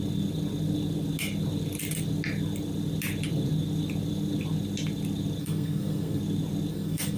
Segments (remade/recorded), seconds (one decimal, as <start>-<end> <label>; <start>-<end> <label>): 0.0-5.4 recorded; 5.4-6.2 remade; 6.2-6.7 recorded; 6.7-7.2 remade